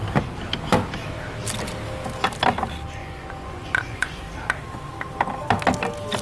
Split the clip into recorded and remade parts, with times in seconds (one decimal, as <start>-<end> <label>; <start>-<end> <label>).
0.0-3.0 recorded; 3.0-4.2 remade; 4.2-6.2 recorded

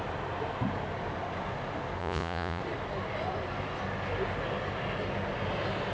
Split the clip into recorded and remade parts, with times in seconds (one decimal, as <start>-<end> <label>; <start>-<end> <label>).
0.0-2.0 recorded; 2.0-2.6 remade; 2.6-5.9 recorded

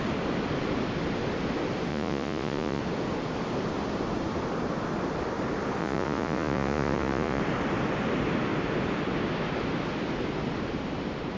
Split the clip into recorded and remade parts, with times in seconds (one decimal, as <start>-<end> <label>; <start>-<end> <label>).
0.0-1.9 recorded; 1.9-2.8 remade; 2.8-5.8 recorded; 5.8-7.4 remade; 7.4-11.4 recorded

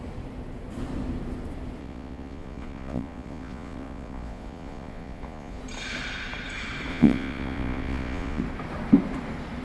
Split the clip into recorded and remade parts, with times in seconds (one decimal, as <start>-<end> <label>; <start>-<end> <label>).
0.0-1.8 recorded; 1.8-5.6 remade; 5.6-6.9 recorded; 6.9-8.4 remade; 8.4-9.6 recorded

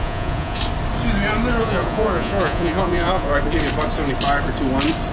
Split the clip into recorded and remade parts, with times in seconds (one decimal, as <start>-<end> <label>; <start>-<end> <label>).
0.0-0.6 remade; 0.6-1.6 recorded; 1.6-3.3 remade; 3.3-5.1 recorded

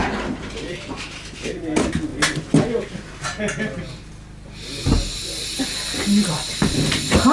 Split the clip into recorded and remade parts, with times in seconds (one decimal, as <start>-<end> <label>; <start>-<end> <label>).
0.0-7.3 recorded